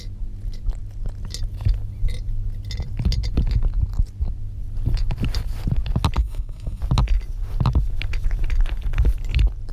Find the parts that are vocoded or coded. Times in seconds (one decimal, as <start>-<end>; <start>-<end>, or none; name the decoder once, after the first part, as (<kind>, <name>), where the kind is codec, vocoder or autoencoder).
6.2-6.8 (codec, SNAC)